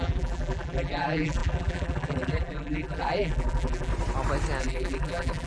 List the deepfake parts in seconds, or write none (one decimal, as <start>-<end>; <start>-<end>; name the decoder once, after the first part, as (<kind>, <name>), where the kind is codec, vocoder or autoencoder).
0.0-3.9 (vocoder, BigVGAN v2); 4.6-5.5